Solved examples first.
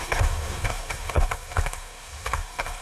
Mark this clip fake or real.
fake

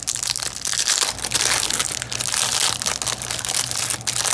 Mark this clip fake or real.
real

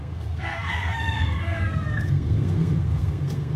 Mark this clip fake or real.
fake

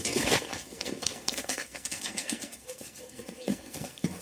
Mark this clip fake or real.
fake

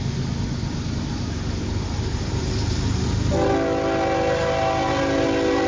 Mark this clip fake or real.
real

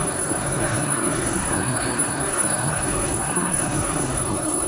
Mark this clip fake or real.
fake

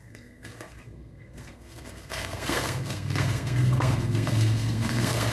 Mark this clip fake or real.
fake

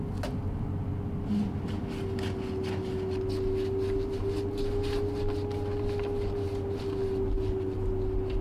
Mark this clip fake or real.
real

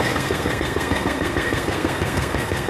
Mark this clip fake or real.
fake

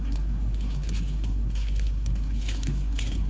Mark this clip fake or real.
fake